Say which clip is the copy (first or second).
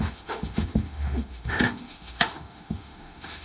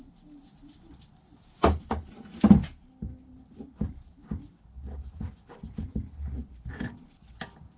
first